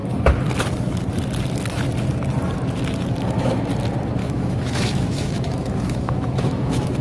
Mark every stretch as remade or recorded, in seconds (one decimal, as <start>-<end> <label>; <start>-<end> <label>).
0.0-4.2 recorded; 4.2-7.0 remade